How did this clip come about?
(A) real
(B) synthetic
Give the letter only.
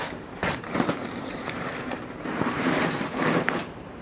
B